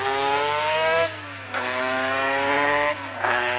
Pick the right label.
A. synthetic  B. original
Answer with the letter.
A